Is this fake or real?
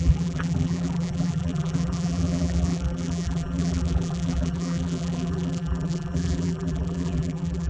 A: fake